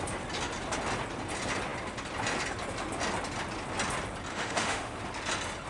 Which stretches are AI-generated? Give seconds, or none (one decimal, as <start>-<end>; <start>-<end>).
4.3-5.0